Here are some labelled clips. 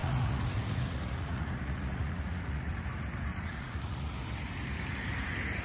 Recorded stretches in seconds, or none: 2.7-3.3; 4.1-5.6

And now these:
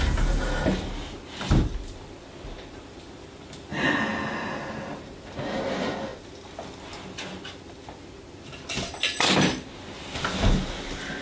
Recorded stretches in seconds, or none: 0.0-11.2

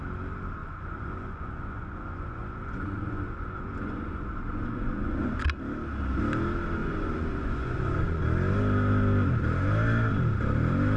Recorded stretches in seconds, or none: 0.0-0.6; 5.4-6.8; 8.2-11.0

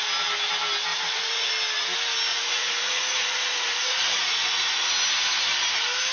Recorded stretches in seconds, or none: 0.0-0.9; 1.5-2.3; 4.9-6.1